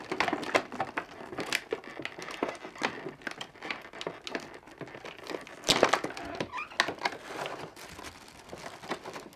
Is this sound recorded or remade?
recorded